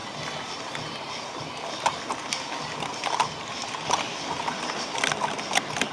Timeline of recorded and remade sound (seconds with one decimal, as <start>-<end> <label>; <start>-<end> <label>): 0.0-5.9 recorded

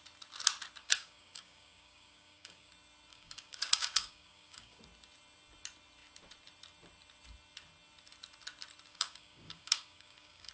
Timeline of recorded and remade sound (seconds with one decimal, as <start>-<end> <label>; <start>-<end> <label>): 0.0-0.8 recorded; 0.8-2.7 remade; 2.7-3.1 recorded; 3.1-4.8 remade; 4.8-8.9 recorded; 8.9-10.5 remade

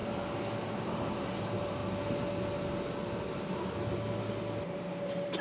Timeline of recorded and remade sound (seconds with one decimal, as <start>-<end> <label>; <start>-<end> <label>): 0.0-0.9 recorded; 0.9-1.8 remade; 1.8-4.8 recorded; 4.8-5.4 remade

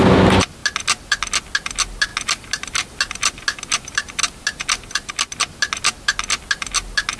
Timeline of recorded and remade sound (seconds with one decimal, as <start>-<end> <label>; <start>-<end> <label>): 0.0-7.2 recorded

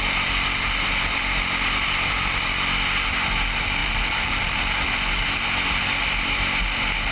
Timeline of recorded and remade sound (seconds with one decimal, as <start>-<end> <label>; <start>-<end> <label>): 0.0-3.8 recorded; 3.8-4.6 remade; 4.6-7.1 recorded

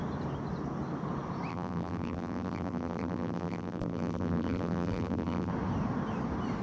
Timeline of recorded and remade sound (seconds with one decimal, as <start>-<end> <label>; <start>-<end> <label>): 0.0-1.5 recorded; 1.5-5.5 remade; 5.5-6.6 recorded

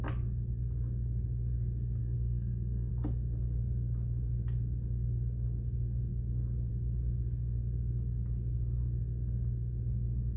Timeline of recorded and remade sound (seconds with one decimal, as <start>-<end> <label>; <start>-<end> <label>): 0.0-2.0 recorded; 2.0-2.9 remade; 2.9-10.4 recorded